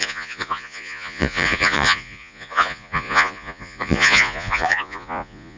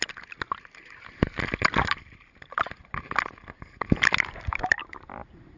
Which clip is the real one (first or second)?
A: second